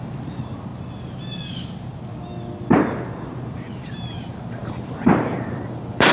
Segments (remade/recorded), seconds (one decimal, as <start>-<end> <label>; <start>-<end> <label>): 0.0-0.7 remade; 0.7-3.7 recorded; 3.7-6.1 remade